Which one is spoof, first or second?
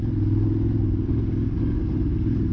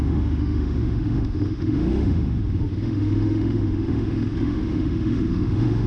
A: second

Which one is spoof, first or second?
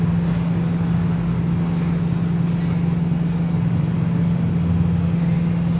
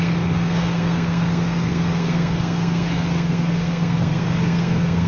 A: second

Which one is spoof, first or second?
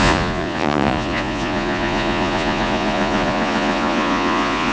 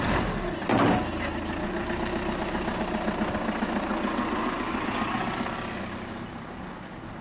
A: first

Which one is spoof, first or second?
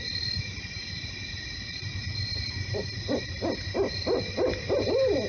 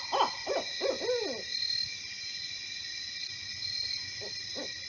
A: first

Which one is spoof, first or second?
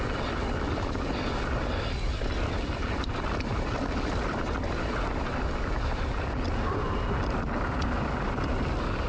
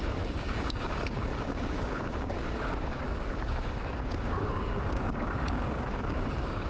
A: second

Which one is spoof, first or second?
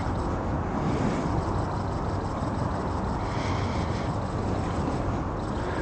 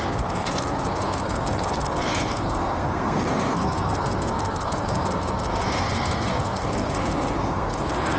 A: second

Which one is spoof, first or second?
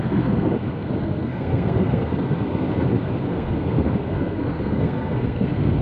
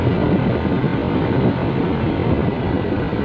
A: first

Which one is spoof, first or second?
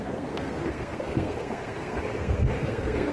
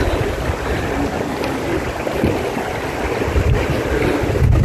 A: first